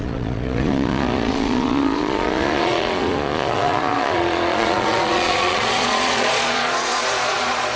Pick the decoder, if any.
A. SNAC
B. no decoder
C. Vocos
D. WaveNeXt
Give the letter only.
C